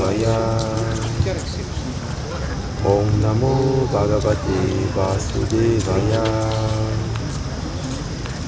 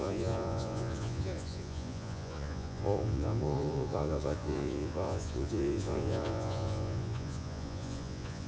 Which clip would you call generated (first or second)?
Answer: second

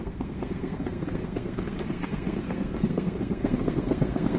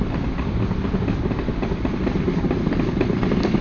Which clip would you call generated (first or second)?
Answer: first